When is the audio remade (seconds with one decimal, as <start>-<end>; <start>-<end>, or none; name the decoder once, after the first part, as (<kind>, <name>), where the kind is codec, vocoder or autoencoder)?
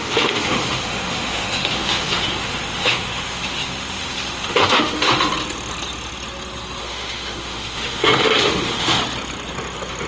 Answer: 0.0-5.3 (autoencoder, DAC-VAE); 6.8-9.0